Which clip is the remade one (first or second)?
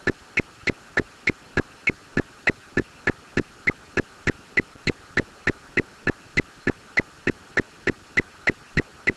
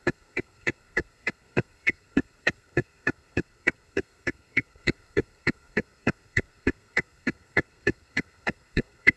second